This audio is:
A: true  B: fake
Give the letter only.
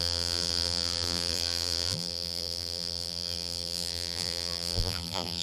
B